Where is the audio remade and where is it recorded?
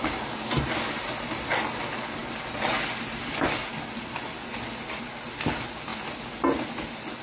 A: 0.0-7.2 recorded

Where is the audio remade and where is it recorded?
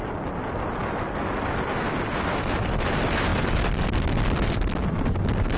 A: 0.0-5.6 recorded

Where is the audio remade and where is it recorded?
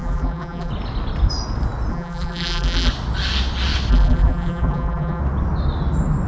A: 0.0-0.7 remade; 0.7-1.9 recorded; 1.9-2.9 remade; 2.9-3.9 recorded; 3.9-5.2 remade; 5.2-6.3 recorded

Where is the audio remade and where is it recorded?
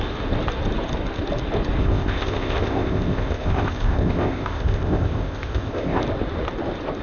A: 0.0-1.8 recorded; 1.8-6.0 remade; 6.0-7.0 recorded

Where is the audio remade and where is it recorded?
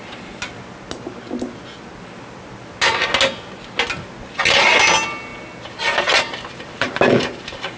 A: 0.0-7.8 recorded